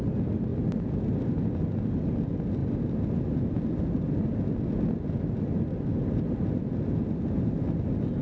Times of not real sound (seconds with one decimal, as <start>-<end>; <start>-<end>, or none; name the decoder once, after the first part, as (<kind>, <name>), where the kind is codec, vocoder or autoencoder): none